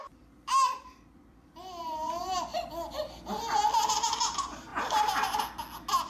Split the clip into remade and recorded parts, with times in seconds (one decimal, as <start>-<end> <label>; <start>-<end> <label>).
0.0-2.5 remade; 2.5-3.9 recorded; 3.9-4.7 remade; 4.7-6.1 recorded